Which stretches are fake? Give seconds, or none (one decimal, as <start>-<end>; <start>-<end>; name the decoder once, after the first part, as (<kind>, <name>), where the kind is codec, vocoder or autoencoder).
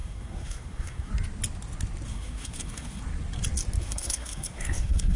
0.0-1.1 (codec, SNAC); 2.1-3.0; 3.8-5.2